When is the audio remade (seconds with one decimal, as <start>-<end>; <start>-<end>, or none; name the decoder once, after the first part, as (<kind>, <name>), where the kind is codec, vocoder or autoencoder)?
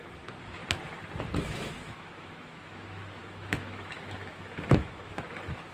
0.0-0.6 (autoencoder, DAC-VAE); 1.2-5.7